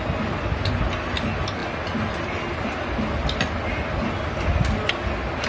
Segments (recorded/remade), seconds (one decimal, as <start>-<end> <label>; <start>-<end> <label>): 0.0-5.5 recorded